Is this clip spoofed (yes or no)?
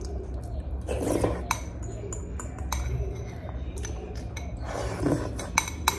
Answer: no